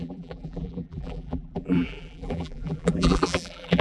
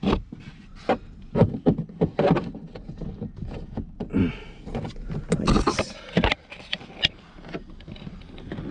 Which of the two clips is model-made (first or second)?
first